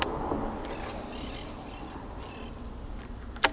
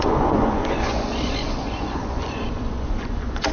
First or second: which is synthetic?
second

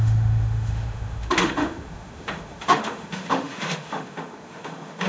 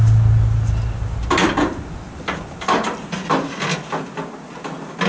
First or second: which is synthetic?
first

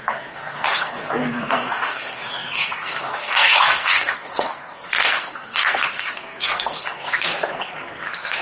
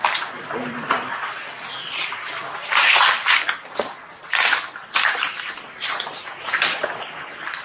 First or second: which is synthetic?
first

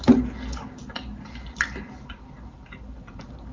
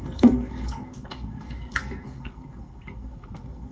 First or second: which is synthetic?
second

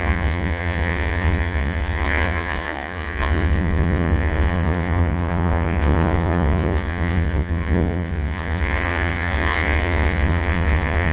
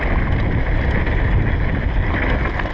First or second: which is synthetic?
first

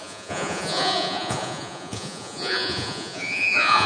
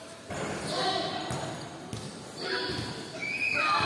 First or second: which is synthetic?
first